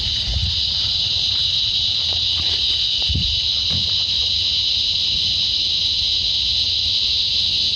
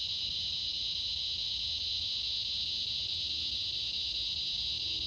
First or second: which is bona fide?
second